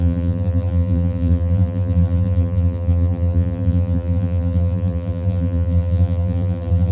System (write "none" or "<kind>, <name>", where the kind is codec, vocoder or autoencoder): vocoder, BigVGAN v2